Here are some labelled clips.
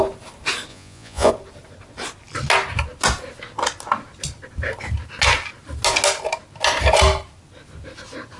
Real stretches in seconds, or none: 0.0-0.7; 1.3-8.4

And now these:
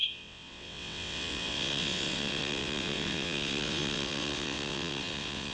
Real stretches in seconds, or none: none

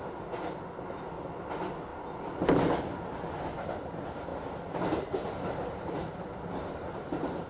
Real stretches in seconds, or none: 0.0-7.5